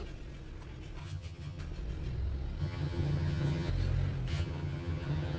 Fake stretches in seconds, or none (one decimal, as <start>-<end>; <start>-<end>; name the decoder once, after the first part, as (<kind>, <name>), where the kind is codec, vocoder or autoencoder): 1.0-1.6 (vocoder, HiFi-GAN); 2.6-3.7; 4.3-5.4